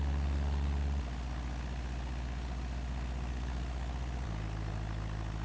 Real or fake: real